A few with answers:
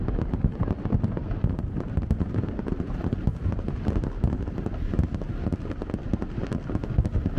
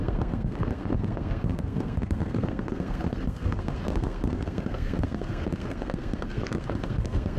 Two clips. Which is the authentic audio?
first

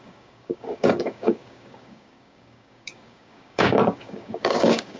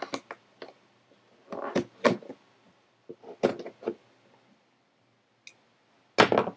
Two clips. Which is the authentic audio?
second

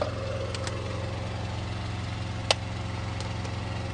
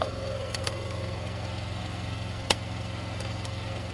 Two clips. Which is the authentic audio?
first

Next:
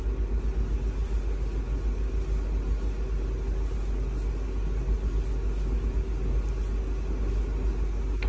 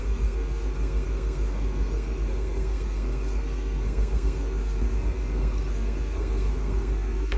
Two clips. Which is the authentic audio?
first